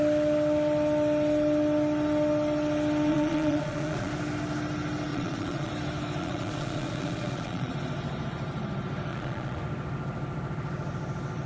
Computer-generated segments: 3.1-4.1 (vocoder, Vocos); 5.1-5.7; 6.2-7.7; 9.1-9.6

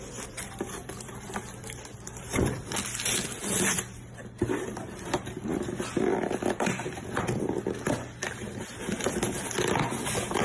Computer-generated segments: 0.0-4.2 (vocoder, BigVGAN v2); 4.8-10.4